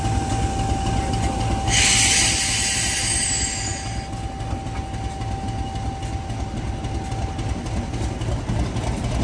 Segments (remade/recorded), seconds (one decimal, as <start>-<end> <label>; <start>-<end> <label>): 0.0-9.2 recorded